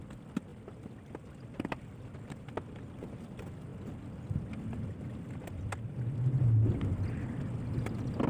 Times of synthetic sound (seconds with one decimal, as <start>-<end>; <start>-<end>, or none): none